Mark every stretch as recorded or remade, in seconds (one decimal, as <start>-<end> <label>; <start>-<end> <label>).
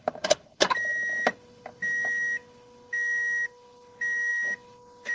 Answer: 0.0-5.1 recorded